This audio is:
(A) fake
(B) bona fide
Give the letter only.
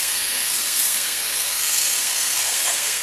A